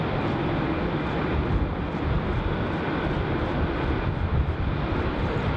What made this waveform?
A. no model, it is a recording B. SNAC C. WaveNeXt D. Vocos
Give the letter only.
A